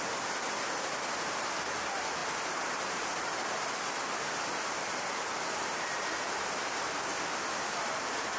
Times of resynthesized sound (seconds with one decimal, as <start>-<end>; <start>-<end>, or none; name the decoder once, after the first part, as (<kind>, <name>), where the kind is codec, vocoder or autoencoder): 0.0-7.1 (vocoder, BigVGAN v2); 7.8-8.4